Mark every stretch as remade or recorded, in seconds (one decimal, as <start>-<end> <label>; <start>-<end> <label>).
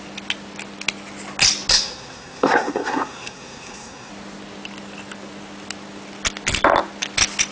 0.0-1.7 recorded; 1.7-4.1 remade; 4.1-7.5 recorded